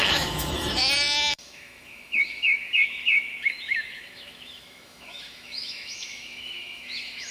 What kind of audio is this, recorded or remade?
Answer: remade